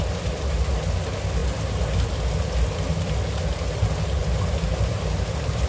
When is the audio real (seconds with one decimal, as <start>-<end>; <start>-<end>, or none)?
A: 0.0-4.2